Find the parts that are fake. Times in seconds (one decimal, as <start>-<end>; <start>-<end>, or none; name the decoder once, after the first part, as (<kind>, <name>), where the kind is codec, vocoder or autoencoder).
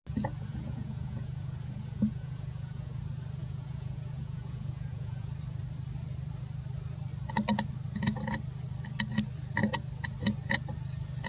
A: 0.5-3.0 (vocoder, Vocos); 3.4-5.3